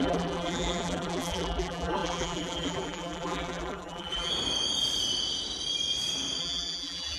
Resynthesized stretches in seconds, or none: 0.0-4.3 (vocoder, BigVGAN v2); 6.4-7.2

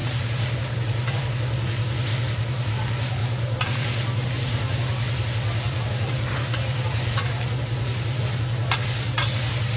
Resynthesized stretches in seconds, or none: 0.0-1.3 (vocoder, BigVGAN v2); 2.1-2.7; 3.2-8.2

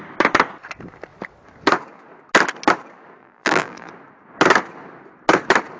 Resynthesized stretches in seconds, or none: 3.2-3.9 (vocoder, BigVGAN v2)

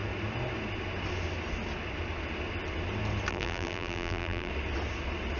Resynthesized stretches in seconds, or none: 3.3-4.5 (vocoder, BigVGAN v2)

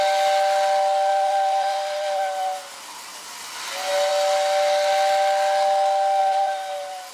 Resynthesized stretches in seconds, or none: 1.1-3.6 (vocoder, BigVGAN v2); 6.2-7.1

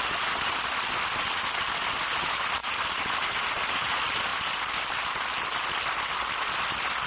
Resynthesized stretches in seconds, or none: 2.6-3.5 (vocoder, BigVGAN v2)

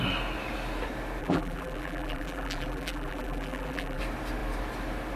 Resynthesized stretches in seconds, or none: 1.2-4.0 (vocoder, BigVGAN v2)

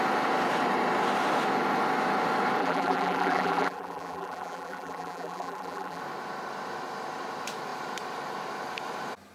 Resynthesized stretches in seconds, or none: 2.6-6.0 (vocoder, BigVGAN v2)